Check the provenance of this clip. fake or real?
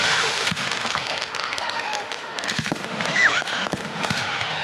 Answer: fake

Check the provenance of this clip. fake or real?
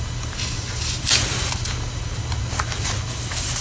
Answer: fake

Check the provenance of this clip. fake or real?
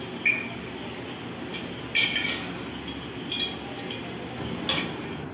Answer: real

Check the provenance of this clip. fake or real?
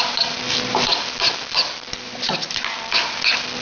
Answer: real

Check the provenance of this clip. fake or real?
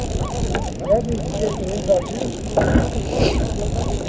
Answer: real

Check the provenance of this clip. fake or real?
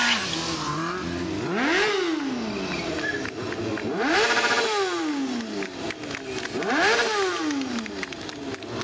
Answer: real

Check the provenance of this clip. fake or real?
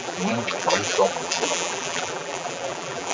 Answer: fake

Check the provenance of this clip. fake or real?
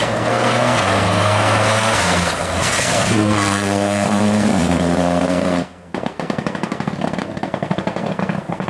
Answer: fake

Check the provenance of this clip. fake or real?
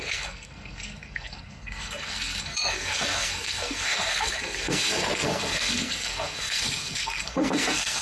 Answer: fake